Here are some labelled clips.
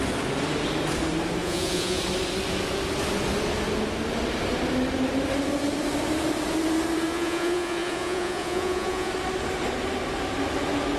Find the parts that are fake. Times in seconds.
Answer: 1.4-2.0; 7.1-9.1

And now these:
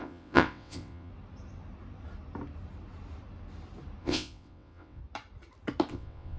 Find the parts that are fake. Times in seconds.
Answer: 0.0-1.1; 4.0-5.0; 5.9-6.4